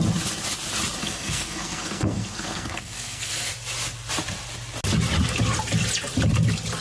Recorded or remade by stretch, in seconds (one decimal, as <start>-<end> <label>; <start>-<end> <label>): 0.0-1.0 recorded; 1.0-3.5 remade; 3.5-6.8 recorded